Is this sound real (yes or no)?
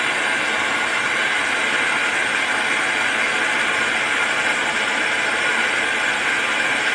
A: yes